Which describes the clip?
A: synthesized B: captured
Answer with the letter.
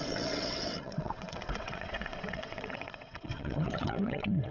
A